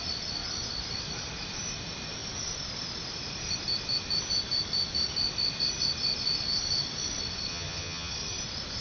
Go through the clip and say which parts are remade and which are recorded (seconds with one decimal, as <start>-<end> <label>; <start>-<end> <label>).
0.0-7.5 recorded; 7.5-8.1 remade; 8.1-8.8 recorded